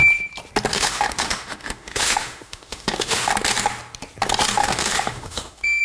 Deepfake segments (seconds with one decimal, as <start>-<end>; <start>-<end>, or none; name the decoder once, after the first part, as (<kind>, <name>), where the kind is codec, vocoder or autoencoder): 0.7-3.3 (autoencoder, DAC-VAE); 4.6-5.8